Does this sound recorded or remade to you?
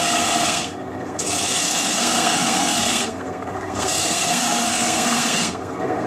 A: remade